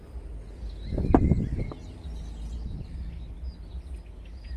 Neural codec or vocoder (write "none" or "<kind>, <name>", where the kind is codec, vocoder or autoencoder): none